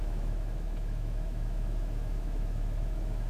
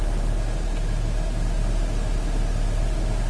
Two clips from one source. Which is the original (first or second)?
second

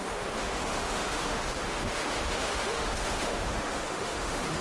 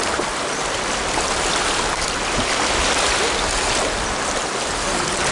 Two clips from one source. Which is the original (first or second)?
second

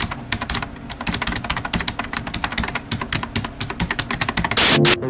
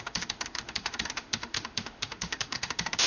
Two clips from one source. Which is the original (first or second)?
first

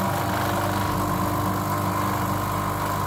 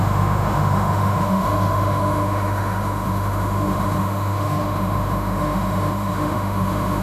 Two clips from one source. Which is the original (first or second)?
first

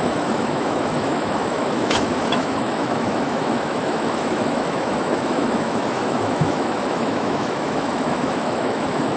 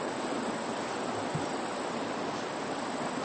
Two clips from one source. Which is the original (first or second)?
second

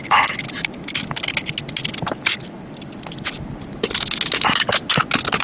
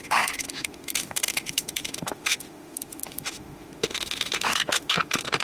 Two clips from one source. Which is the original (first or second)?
first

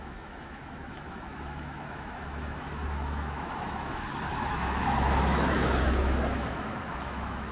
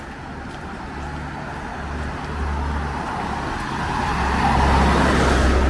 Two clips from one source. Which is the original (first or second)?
second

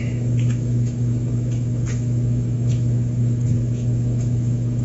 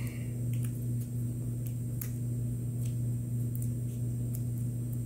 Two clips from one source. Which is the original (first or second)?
second